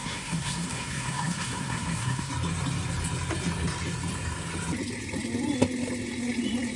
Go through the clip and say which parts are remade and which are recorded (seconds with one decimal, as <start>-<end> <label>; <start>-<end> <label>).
0.0-2.3 remade; 2.3-6.8 recorded